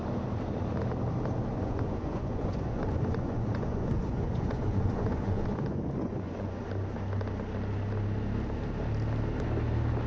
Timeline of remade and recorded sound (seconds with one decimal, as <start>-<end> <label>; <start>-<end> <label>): 0.0-1.5 recorded; 1.5-6.6 remade; 6.6-10.1 recorded